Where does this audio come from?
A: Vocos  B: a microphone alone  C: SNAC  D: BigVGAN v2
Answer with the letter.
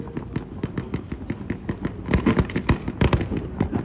B